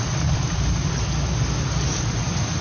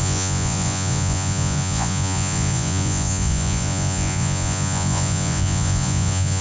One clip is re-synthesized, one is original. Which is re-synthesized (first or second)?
second